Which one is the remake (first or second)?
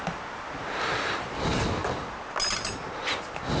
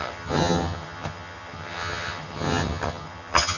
second